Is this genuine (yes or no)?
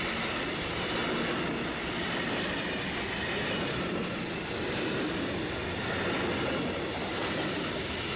yes